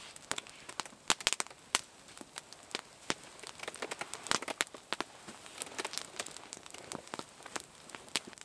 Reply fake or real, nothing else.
real